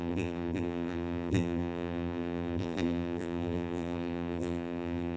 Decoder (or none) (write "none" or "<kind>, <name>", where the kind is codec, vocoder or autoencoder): vocoder, BigVGAN v2